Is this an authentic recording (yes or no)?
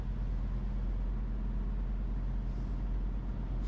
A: yes